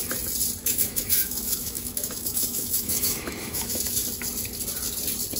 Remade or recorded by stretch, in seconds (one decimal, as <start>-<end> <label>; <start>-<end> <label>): 0.0-0.6 recorded; 0.6-4.0 remade; 4.0-5.4 recorded